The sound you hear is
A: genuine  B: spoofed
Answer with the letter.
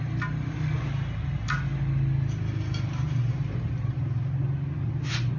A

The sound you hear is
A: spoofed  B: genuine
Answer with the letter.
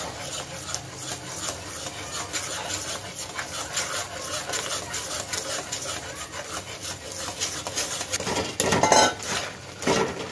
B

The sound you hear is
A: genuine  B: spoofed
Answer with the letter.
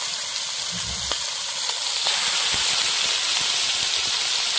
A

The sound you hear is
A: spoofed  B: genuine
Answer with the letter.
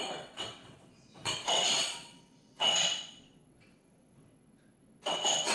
A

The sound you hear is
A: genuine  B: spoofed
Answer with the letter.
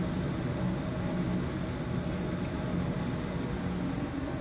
A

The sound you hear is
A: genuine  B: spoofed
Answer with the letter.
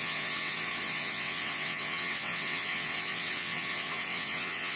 B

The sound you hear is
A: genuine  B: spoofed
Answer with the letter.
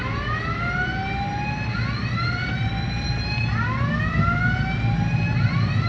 A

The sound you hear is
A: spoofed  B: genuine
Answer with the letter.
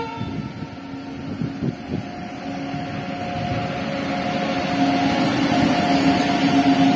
B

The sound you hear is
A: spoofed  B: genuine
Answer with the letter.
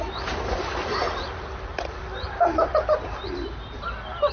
B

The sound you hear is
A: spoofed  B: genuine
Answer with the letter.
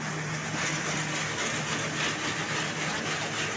B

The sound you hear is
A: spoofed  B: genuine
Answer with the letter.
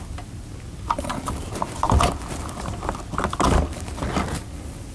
B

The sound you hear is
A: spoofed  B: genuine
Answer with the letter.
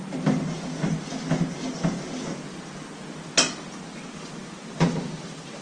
B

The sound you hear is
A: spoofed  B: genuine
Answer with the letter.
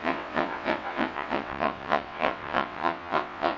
A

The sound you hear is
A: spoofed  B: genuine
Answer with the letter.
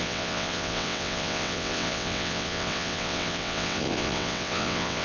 A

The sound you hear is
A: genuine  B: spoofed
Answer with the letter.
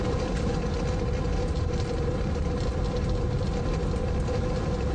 A